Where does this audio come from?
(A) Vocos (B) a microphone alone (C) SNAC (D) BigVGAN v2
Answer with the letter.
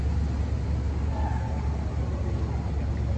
B